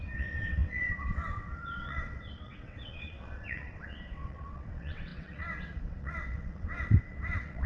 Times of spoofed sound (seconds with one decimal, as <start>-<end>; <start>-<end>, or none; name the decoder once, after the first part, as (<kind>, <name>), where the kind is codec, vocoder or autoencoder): 0.0-7.7 (vocoder, WaveNeXt)